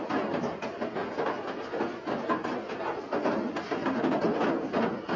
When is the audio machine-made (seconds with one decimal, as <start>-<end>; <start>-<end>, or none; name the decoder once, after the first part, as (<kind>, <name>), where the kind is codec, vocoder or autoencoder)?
none